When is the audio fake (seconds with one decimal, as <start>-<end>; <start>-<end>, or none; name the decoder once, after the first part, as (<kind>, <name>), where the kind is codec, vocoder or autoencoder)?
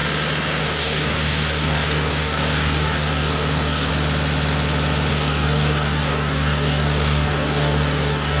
0.6-3.9 (codec, DAC); 5.1-8.4